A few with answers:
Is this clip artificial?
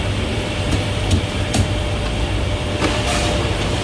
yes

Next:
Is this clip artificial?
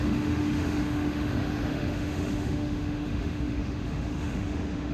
yes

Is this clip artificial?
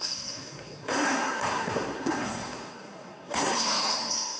yes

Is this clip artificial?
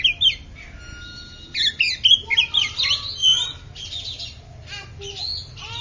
no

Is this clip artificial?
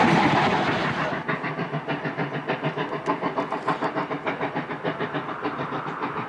no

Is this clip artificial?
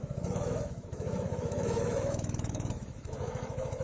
yes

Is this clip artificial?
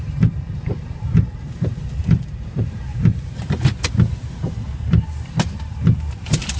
yes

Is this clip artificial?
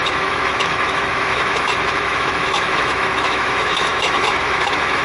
yes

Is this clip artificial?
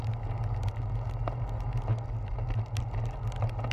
no